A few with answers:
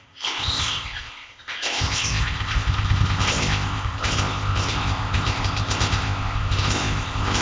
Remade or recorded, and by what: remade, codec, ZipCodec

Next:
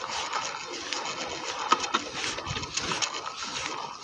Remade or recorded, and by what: recorded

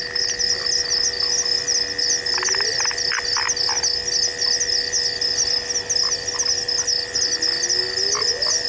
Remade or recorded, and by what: recorded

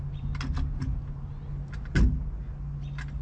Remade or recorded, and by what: recorded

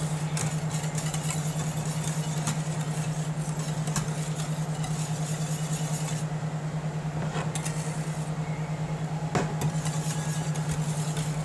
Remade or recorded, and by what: recorded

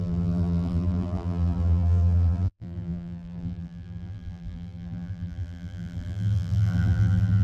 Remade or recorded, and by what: remade, vocoder, BigVGAN v2